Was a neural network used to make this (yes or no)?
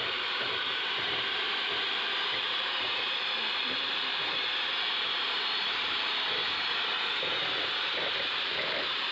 yes